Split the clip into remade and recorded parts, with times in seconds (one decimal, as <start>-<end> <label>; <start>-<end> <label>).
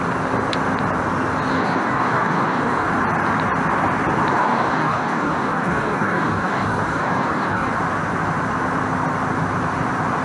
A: 0.0-1.5 recorded; 1.5-2.9 remade; 2.9-4.3 recorded; 4.3-7.7 remade; 7.7-10.2 recorded